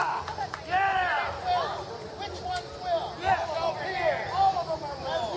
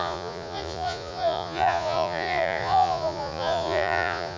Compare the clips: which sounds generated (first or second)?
second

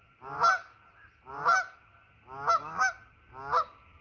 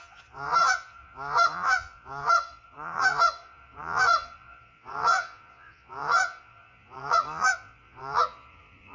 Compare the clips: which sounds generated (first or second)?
second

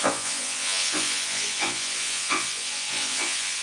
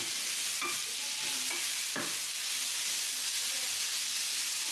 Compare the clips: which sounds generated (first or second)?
first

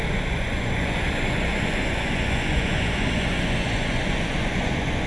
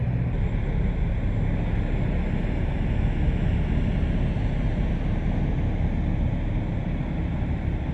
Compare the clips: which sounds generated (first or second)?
first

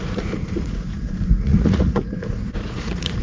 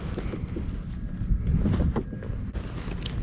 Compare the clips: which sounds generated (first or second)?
first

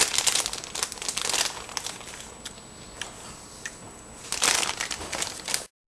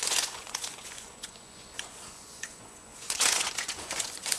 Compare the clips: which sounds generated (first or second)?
second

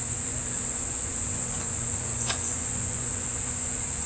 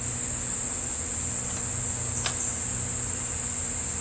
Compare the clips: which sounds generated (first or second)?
first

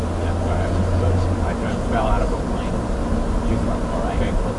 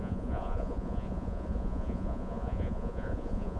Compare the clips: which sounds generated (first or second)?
second